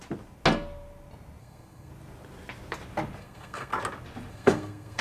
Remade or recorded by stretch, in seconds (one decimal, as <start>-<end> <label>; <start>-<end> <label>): 0.0-1.4 recorded; 1.4-1.9 remade; 1.9-3.2 recorded; 3.2-3.7 remade; 3.7-4.3 recorded; 4.3-5.0 remade